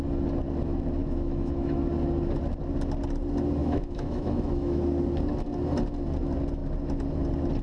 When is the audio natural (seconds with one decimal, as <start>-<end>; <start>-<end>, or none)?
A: 0.0-1.0; 1.8-3.6; 4.8-7.6